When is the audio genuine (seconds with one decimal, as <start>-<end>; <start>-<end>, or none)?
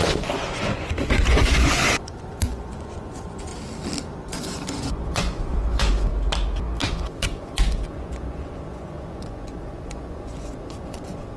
3.5-4.1; 6.1-6.9